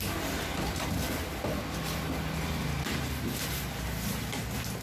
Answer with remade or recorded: recorded